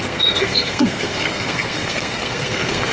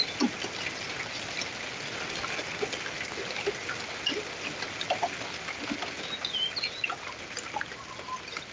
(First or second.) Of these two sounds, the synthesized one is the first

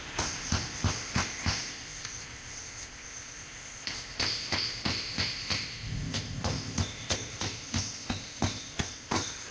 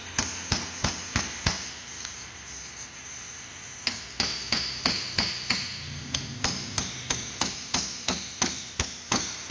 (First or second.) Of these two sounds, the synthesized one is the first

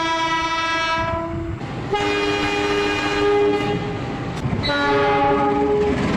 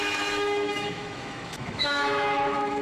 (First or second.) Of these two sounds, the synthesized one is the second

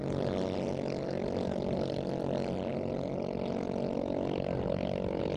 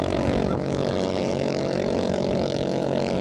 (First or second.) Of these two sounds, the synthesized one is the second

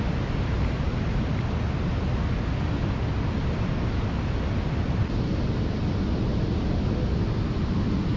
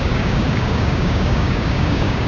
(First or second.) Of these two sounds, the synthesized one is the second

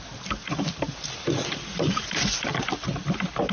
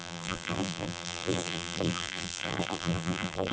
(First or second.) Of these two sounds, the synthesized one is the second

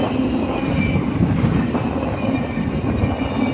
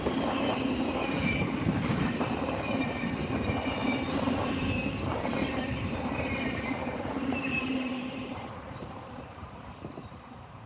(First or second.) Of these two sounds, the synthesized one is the second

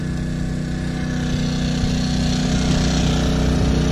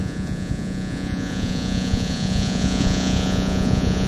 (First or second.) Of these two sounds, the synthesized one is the second